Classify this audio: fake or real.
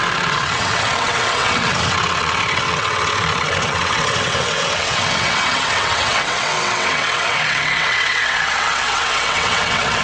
fake